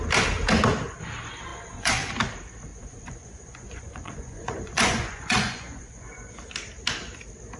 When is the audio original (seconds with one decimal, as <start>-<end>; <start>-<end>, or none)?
0.0-1.5; 2.1-2.7; 6.3-7.6